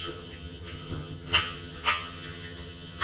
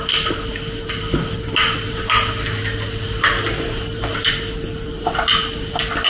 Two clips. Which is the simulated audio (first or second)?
first